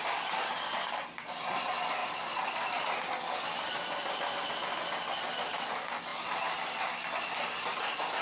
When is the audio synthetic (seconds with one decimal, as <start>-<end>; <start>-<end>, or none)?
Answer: none